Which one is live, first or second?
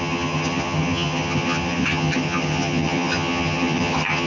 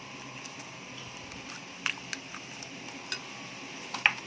second